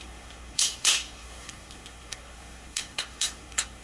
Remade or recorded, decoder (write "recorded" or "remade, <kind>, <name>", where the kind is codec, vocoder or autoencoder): remade, codec, SNAC